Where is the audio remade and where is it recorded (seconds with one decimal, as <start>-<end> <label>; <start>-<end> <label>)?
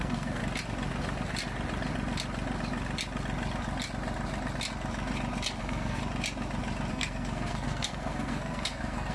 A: 0.0-0.4 remade; 0.4-5.6 recorded; 5.6-6.0 remade; 6.0-6.9 recorded; 6.9-9.1 remade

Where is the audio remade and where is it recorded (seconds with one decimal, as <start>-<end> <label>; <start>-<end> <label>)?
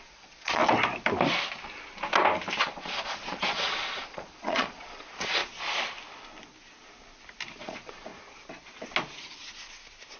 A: 0.0-0.6 remade; 0.6-2.6 recorded; 2.6-5.4 remade; 5.4-7.6 recorded; 7.6-8.1 remade; 8.1-10.2 recorded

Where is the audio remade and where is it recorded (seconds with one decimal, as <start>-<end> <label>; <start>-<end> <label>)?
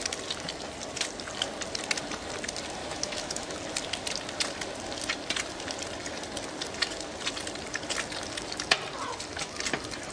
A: 0.0-2.8 recorded; 2.8-3.6 remade; 3.6-10.1 recorded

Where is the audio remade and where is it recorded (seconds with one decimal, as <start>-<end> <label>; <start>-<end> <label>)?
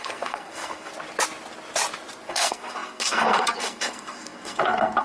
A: 0.0-0.9 remade; 0.9-2.3 recorded; 2.3-5.0 remade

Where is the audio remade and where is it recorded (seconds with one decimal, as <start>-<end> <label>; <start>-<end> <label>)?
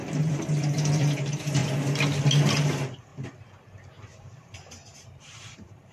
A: 0.0-1.6 remade; 1.6-2.6 recorded; 2.6-3.1 remade; 3.1-3.6 recorded; 3.6-5.9 remade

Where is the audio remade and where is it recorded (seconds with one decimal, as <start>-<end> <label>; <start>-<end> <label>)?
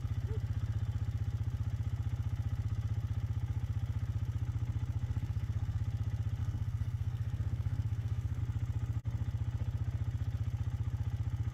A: 0.0-5.0 recorded; 5.0-5.8 remade; 5.8-6.4 recorded; 6.4-8.4 remade; 8.4-11.5 recorded